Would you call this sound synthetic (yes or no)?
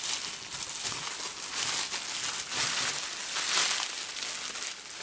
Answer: no